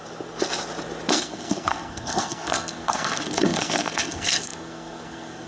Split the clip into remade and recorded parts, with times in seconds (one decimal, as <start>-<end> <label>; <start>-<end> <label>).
0.0-1.1 recorded; 1.1-5.5 remade